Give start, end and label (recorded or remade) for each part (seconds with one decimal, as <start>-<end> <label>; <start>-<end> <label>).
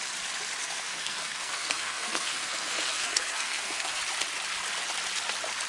0.0-0.6 recorded; 0.6-4.0 remade; 4.0-5.7 recorded